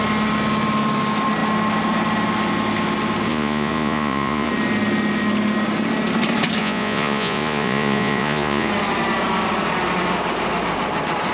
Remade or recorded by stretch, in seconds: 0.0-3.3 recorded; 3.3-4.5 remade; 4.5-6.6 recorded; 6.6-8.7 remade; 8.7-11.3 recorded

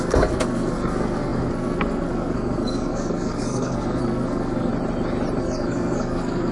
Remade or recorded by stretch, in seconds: 0.0-4.7 remade; 4.7-5.4 recorded; 5.4-6.5 remade

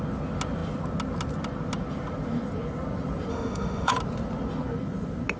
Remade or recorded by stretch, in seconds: 0.0-3.3 recorded; 3.3-3.9 remade; 3.9-5.4 recorded

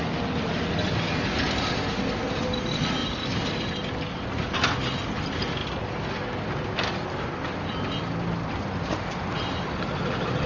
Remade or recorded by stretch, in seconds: 0.0-10.5 recorded

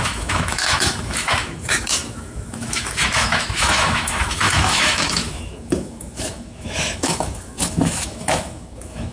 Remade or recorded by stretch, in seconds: 0.0-9.1 remade

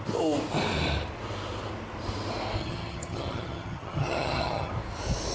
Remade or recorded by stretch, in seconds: 0.0-2.6 recorded; 2.6-4.7 remade; 4.7-5.3 recorded

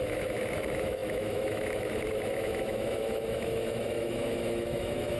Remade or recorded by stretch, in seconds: 0.0-5.2 remade

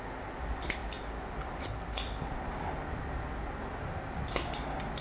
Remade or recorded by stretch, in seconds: 0.0-5.0 recorded